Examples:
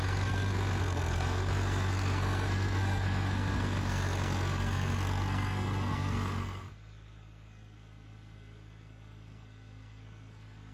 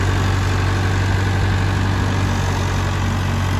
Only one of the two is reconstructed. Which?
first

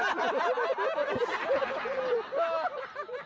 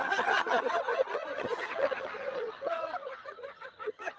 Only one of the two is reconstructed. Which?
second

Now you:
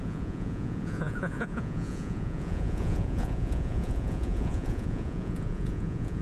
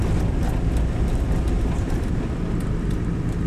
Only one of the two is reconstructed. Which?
first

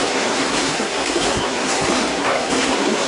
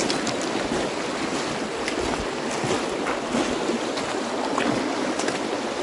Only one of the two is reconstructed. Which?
first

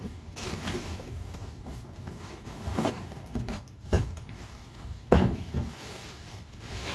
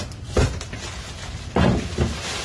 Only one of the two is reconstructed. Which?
first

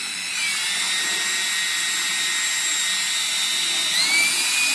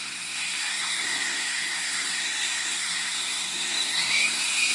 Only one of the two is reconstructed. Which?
second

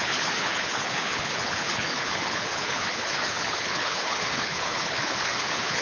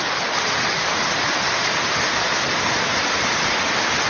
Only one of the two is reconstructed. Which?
first